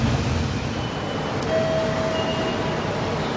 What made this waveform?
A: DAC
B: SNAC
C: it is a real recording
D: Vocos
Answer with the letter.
C